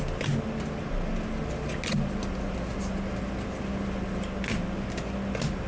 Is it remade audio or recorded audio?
recorded